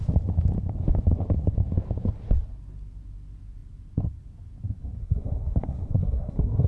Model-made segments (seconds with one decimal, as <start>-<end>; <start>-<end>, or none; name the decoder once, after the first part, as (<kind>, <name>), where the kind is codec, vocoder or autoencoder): 5.0-6.7 (codec, SNAC)